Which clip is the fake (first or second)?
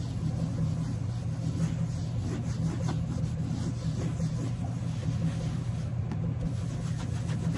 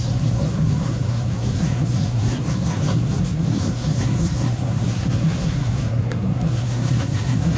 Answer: second